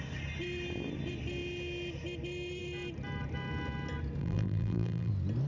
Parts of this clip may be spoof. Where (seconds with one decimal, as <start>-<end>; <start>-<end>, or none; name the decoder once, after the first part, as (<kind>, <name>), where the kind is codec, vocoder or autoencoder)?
4.2-5.1 (vocoder, BigVGAN v2)